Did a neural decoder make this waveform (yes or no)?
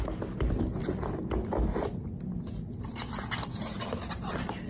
no